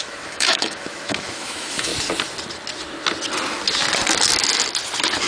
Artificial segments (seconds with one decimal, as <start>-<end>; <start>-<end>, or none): 0.0-1.9